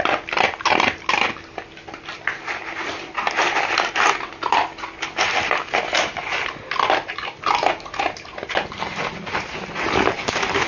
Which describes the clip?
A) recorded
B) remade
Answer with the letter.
A